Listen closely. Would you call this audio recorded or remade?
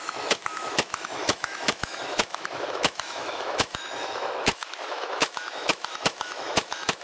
remade